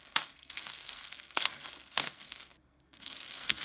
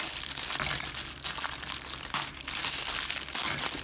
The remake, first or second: first